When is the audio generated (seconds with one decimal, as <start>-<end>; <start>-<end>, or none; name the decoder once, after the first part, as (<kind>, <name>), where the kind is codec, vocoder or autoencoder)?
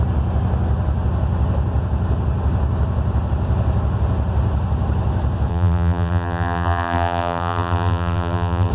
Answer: 5.5-8.7 (vocoder, BigVGAN v2)